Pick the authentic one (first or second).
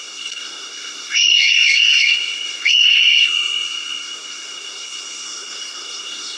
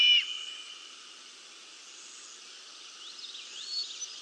second